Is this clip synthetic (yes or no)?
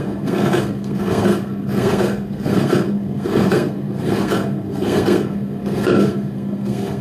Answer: yes